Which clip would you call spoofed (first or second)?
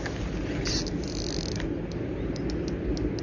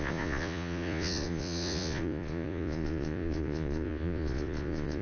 second